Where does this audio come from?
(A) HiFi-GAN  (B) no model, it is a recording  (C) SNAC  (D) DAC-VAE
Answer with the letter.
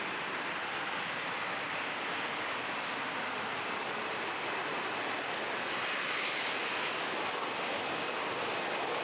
B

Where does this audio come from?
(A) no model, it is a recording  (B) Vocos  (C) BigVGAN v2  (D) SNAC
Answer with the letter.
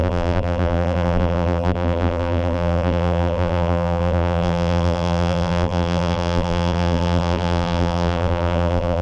C